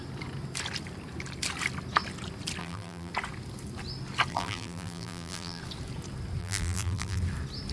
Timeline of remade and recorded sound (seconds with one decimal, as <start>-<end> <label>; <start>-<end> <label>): 0.0-2.6 recorded; 2.6-3.1 remade; 3.1-4.3 recorded; 4.3-5.6 remade; 5.6-6.4 recorded; 6.4-7.2 remade; 7.2-7.7 recorded